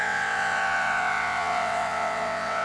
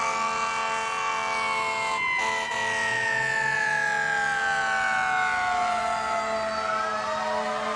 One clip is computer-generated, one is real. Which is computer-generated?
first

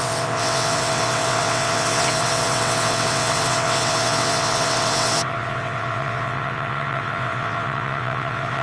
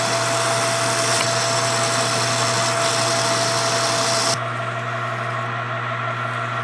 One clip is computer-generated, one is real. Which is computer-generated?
first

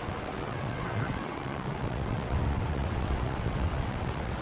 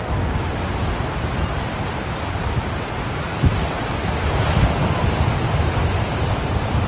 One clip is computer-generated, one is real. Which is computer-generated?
first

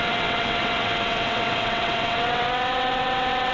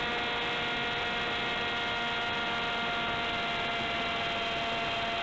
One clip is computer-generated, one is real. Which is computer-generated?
first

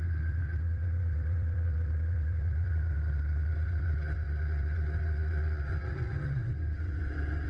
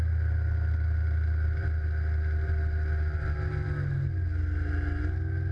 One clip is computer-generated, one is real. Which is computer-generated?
first